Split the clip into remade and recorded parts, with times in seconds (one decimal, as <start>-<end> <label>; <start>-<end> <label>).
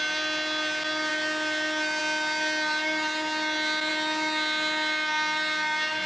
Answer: 0.0-6.1 recorded